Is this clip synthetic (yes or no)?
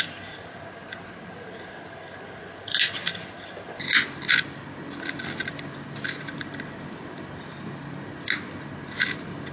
no